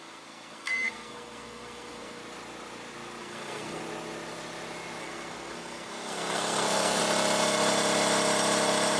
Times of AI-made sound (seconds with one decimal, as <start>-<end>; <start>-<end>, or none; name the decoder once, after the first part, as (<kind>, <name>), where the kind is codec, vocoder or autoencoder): 0.0-2.2 (codec, SNAC); 3.2-3.8; 5.0-7.0